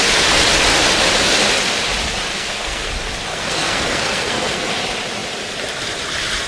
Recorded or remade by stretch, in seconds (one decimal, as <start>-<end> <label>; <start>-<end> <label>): 0.0-2.3 recorded; 2.3-2.9 remade; 2.9-3.3 recorded; 3.3-4.7 remade; 4.7-6.5 recorded